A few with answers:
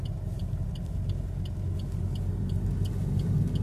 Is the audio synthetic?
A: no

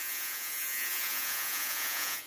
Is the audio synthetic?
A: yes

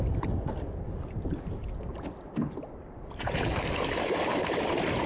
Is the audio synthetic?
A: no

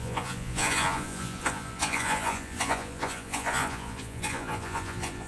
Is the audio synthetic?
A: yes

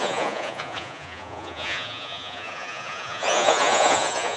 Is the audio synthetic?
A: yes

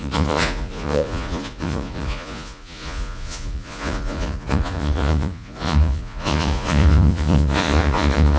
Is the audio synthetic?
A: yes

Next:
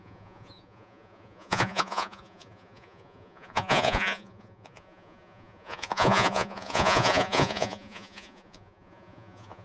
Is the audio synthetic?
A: yes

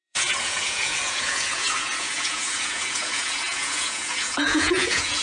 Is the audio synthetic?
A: yes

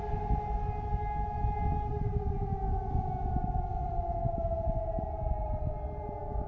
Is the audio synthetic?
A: no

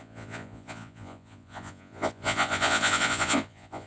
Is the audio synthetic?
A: yes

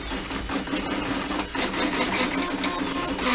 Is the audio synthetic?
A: no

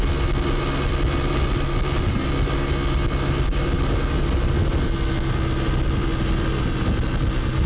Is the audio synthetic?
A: no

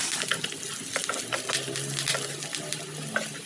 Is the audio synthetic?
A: no